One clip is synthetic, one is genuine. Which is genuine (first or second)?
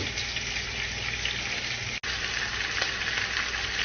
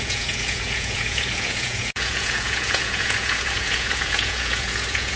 first